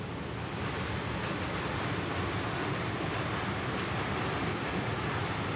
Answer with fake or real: real